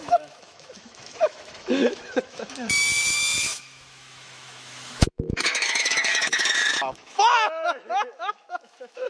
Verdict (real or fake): fake